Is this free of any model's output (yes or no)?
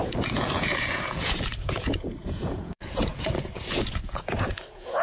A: no